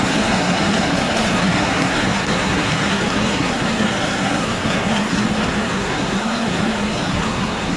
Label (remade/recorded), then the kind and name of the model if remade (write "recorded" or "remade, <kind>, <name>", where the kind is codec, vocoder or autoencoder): remade, codec, SNAC